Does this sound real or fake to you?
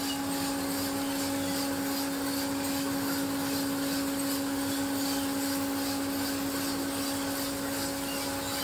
real